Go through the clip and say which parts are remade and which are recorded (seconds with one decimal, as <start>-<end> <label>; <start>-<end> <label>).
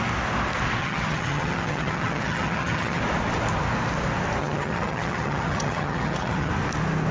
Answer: 0.0-0.8 recorded; 0.8-3.0 remade; 3.0-4.4 recorded; 4.4-6.5 remade; 6.5-7.1 recorded